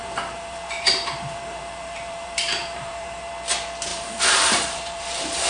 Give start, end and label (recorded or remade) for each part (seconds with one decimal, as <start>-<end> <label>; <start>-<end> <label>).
0.0-3.3 remade; 3.3-3.9 recorded; 3.9-5.5 remade